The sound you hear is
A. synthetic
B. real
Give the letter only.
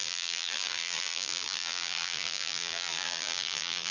A